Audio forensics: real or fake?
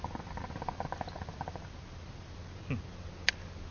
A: real